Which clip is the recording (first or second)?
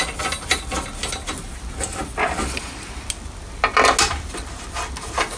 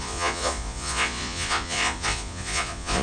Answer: first